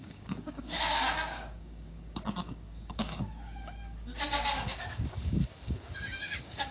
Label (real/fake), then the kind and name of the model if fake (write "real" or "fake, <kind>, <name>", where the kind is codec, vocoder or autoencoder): fake, codec, DAC